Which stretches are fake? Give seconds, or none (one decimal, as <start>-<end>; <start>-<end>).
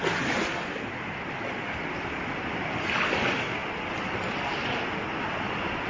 none